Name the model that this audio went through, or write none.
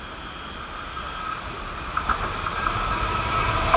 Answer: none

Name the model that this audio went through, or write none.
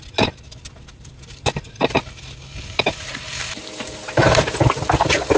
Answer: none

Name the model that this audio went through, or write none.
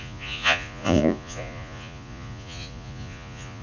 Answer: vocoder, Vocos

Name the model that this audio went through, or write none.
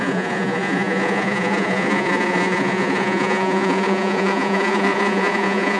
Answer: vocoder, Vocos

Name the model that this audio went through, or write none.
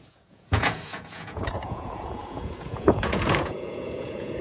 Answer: vocoder, Vocos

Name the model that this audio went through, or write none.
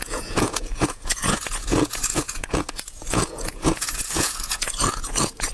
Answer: vocoder, Vocos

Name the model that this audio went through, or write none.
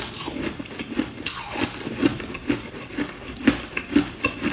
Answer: none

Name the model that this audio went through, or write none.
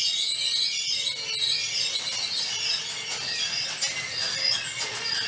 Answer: none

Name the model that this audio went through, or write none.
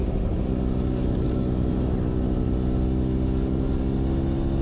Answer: none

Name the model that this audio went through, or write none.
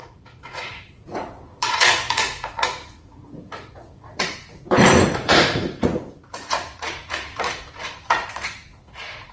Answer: vocoder, Vocos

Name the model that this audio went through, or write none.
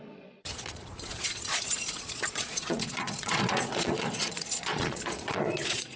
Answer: vocoder, Vocos